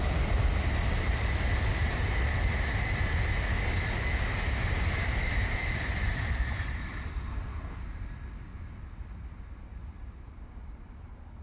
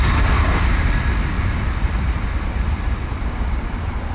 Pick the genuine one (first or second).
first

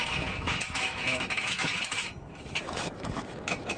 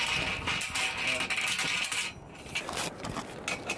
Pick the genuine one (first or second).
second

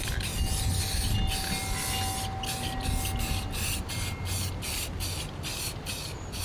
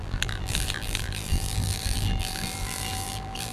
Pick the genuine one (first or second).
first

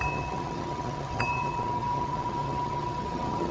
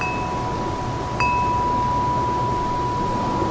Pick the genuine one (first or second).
second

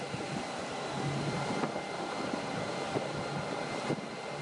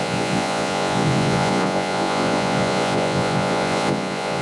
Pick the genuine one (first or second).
first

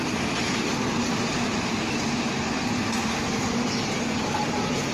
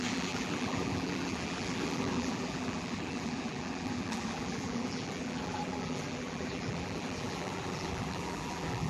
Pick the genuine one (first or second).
first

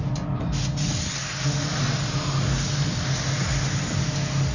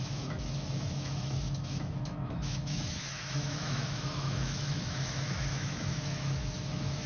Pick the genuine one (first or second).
first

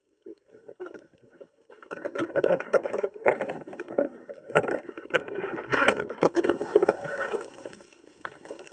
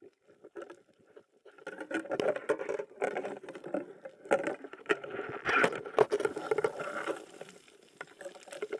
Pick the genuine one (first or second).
second